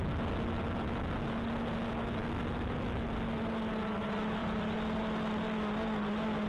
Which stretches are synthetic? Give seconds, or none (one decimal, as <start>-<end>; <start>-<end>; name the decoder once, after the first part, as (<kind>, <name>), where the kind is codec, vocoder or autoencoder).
4.4-5.0 (vocoder, BigVGAN v2)